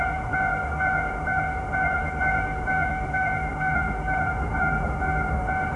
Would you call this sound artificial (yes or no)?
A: yes